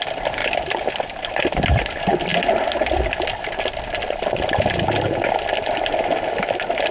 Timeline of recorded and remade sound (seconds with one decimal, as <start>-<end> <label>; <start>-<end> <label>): 0.0-6.9 recorded